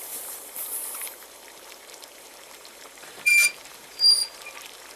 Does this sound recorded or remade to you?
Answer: remade